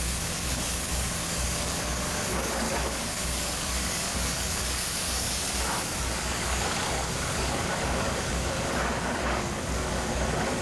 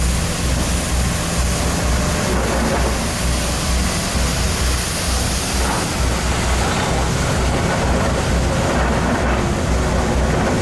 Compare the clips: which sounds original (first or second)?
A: second